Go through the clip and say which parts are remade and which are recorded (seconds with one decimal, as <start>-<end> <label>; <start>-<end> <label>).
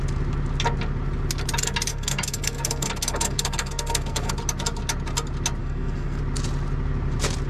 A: 0.0-1.9 recorded; 1.9-4.3 remade; 4.3-5.6 recorded; 5.6-6.2 remade; 6.2-7.5 recorded